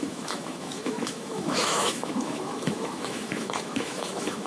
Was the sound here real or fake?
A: fake